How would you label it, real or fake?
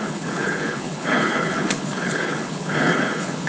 fake